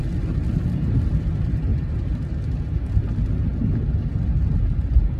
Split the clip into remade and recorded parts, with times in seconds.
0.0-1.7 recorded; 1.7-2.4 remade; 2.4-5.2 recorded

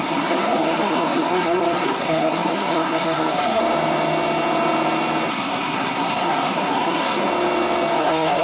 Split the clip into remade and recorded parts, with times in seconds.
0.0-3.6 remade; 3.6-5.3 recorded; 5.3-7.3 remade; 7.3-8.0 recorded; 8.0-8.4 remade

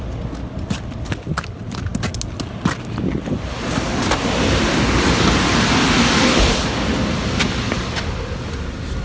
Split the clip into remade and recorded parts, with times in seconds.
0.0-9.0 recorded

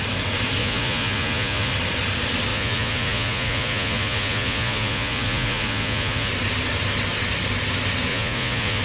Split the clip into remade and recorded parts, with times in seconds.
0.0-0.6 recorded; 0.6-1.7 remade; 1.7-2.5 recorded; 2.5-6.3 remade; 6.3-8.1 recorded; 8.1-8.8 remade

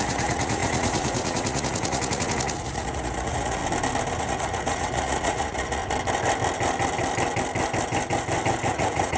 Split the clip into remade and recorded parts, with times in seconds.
0.0-3.6 remade; 3.6-4.2 recorded; 4.2-5.8 remade; 5.8-8.7 recorded; 8.7-9.2 remade

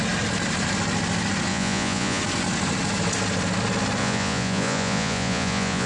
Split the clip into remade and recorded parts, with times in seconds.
0.0-1.5 recorded; 1.5-2.2 remade; 2.2-4.0 recorded; 4.0-5.9 remade